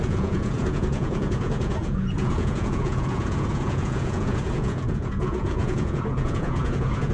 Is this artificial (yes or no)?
yes